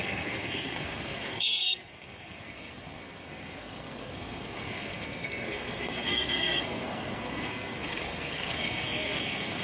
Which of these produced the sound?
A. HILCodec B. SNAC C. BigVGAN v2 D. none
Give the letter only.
B